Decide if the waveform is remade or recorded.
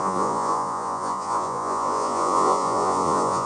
remade